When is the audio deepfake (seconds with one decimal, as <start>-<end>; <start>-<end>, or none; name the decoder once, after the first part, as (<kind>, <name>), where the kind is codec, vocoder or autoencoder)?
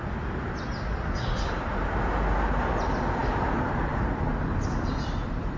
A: none